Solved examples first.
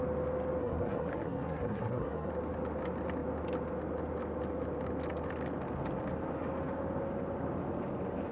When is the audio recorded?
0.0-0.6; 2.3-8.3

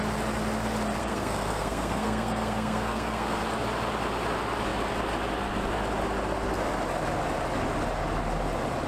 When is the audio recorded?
0.0-1.0; 3.4-8.9